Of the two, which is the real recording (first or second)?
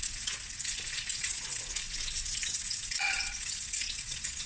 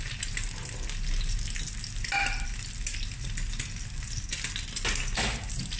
second